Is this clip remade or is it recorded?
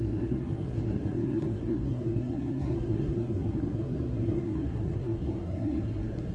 remade